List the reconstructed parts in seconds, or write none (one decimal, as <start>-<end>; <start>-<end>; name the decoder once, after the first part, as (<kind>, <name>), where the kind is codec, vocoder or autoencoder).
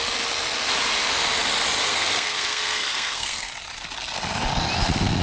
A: 1.9-3.5 (codec, SNAC)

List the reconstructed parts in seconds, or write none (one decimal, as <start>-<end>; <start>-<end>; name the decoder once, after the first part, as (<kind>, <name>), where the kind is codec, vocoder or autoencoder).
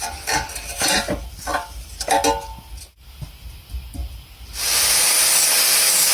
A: none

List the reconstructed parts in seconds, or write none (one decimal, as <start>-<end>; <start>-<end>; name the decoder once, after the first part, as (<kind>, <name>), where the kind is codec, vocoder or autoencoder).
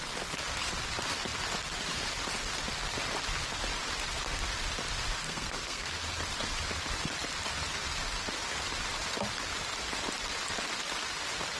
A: 5.2-5.9 (codec, SNAC)